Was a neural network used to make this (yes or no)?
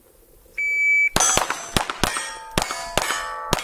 no